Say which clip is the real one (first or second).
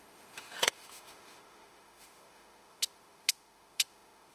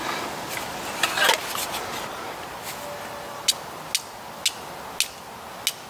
second